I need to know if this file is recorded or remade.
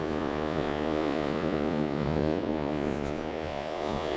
remade